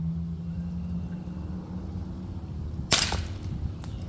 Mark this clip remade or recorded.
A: recorded